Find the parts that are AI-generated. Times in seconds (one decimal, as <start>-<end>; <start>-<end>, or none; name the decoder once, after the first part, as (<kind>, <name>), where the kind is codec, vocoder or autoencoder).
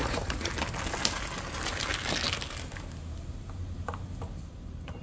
0.0-0.5 (vocoder, Vocos)